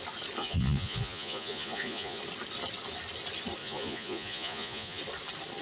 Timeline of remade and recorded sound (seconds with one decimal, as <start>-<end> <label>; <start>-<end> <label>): 0.0-0.4 recorded; 0.4-2.2 remade; 2.2-3.6 recorded; 3.6-5.0 remade; 5.0-5.6 recorded